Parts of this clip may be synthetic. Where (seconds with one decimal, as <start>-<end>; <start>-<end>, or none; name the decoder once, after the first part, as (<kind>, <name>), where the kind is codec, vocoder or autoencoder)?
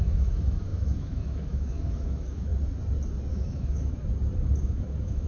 0.0-2.5 (autoencoder, DAC-VAE); 3.3-4.0; 4.6-5.3